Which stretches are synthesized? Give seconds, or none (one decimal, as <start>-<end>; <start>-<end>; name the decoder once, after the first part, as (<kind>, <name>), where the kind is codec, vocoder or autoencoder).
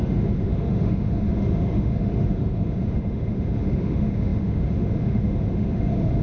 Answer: 0.0-6.2 (autoencoder, DAC-VAE)